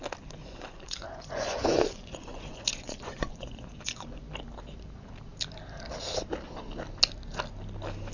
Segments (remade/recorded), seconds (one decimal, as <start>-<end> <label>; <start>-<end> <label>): 0.0-0.4 recorded; 0.4-4.2 remade; 4.2-8.1 recorded